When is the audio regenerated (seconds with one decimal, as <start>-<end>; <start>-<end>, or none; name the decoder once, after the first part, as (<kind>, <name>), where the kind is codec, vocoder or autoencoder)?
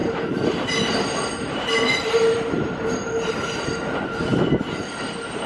none